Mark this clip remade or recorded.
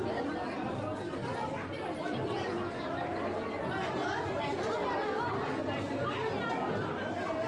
recorded